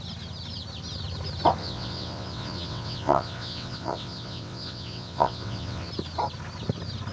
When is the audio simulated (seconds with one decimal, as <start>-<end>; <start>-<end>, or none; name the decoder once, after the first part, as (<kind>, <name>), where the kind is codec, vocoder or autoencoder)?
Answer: 1.6-5.9 (vocoder, WaveNeXt)